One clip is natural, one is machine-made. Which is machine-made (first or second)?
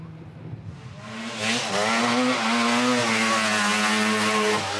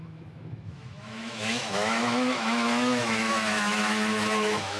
second